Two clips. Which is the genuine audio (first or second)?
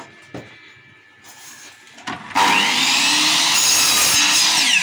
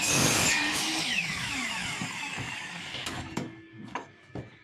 first